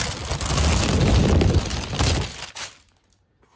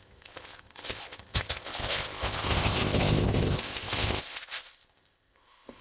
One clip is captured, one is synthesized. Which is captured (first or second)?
first